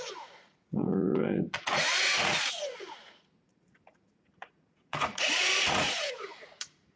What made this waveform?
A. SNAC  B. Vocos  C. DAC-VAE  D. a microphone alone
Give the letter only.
B